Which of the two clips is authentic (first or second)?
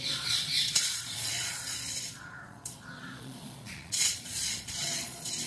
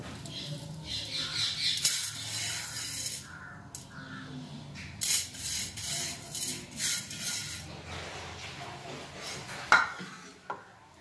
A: second